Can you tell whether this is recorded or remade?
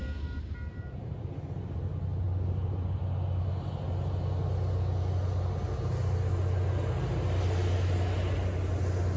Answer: recorded